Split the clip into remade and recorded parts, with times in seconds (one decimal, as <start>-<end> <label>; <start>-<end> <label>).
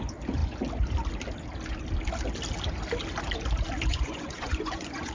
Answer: 0.0-3.9 recorded; 3.9-5.1 remade